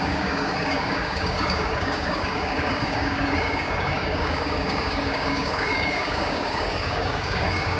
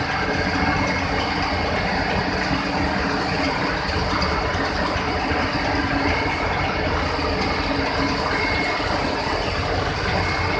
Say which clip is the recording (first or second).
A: second